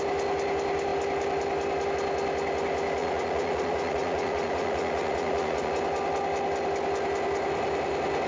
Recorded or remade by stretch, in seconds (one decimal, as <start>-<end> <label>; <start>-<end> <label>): 0.0-3.0 recorded; 3.0-5.7 remade; 5.7-8.3 recorded